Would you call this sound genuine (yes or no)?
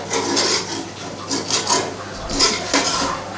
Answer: yes